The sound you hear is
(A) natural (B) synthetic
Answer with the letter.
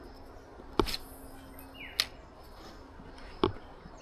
A